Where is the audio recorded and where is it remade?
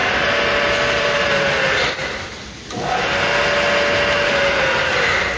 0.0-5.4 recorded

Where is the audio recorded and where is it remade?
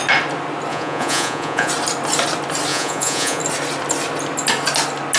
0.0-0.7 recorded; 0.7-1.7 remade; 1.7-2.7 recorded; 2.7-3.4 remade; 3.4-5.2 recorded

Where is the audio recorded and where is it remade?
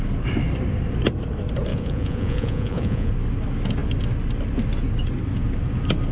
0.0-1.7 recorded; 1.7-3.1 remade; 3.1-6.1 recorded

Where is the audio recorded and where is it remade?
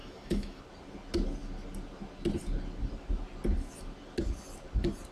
0.0-0.6 remade; 0.6-5.1 recorded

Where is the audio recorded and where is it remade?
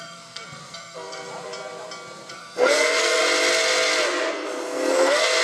0.0-1.3 remade; 1.3-2.3 recorded; 2.3-3.2 remade; 3.2-4.3 recorded; 4.3-5.4 remade